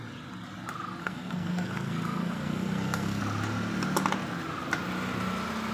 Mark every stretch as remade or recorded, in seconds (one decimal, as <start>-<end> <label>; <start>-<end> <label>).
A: 0.0-1.0 recorded; 1.0-3.2 remade; 3.2-5.7 recorded